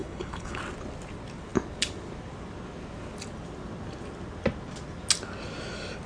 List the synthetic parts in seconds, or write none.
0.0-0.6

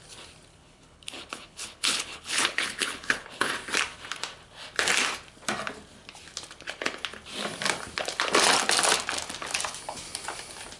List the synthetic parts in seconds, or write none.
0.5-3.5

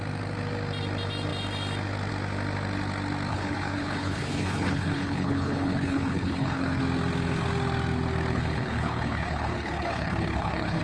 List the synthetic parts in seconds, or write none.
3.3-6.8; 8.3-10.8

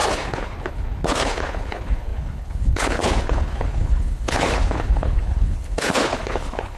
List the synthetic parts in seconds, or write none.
0.0-6.8